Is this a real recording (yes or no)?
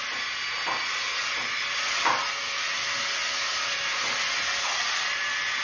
yes